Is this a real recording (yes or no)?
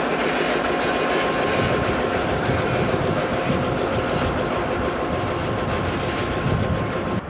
yes